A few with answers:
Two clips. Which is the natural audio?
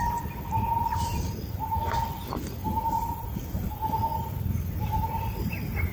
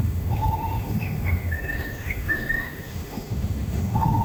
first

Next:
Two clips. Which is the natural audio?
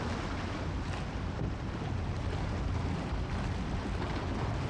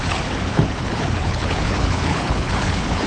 first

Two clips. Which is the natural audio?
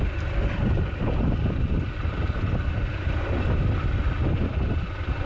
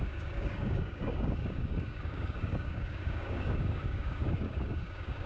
first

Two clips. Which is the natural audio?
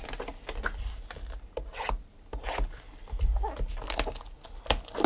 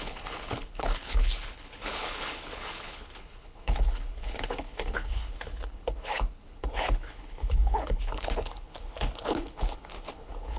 first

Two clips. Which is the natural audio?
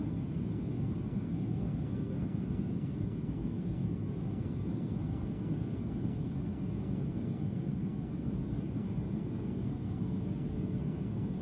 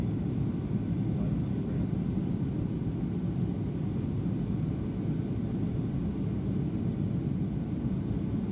second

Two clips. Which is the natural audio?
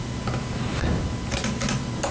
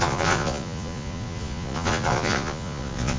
first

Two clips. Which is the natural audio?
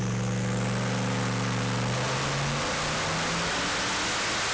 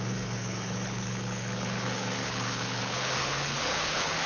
first